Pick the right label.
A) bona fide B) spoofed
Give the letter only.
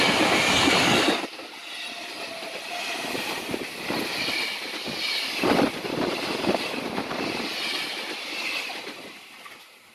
A